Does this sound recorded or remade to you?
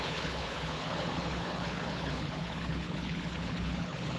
remade